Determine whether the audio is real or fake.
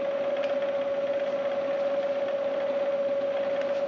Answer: real